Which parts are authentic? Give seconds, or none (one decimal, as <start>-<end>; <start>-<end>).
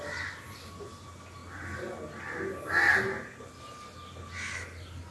0.0-5.1